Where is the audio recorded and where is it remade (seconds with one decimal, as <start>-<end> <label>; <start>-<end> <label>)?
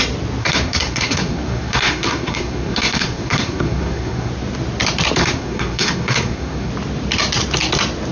0.0-0.4 recorded; 0.4-4.3 remade; 4.3-5.2 recorded; 5.2-6.7 remade; 6.7-8.1 recorded